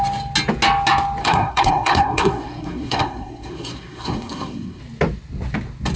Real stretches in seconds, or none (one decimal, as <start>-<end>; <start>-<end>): 0.0-1.2; 4.8-6.0